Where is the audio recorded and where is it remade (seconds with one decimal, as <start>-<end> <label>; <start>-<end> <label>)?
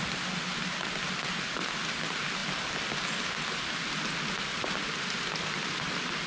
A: 0.0-6.3 recorded